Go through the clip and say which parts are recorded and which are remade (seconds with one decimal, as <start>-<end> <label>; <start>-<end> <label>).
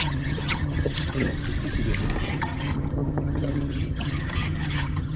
0.0-1.3 remade; 1.3-2.3 recorded; 2.3-5.2 remade